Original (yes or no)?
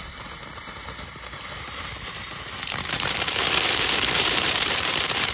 no